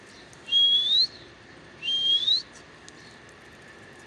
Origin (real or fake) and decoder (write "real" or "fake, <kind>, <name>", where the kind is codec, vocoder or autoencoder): real